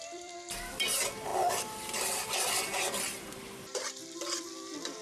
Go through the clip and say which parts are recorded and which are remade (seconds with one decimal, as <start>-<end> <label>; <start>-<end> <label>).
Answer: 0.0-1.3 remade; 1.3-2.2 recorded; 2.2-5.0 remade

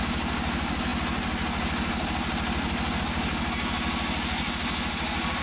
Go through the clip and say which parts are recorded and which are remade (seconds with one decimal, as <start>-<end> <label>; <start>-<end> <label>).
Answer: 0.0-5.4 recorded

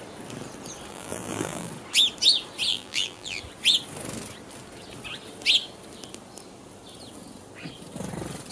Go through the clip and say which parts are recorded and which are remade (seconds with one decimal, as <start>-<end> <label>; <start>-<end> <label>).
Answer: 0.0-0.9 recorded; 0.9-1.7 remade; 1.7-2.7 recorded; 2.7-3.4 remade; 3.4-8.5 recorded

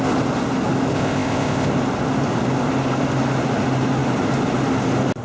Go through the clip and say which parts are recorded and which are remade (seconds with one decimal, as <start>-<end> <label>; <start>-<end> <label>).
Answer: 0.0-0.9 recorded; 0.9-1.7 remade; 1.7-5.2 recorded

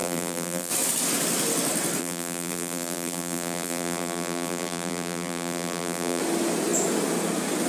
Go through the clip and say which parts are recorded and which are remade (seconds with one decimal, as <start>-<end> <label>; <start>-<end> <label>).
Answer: 0.0-0.7 remade; 0.7-2.0 recorded; 2.0-6.2 remade; 6.2-7.7 recorded

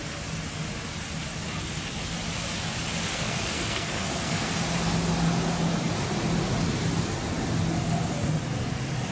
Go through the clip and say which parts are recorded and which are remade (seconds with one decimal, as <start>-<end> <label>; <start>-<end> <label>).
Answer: 0.0-3.1 recorded; 3.1-4.5 remade; 4.5-9.1 recorded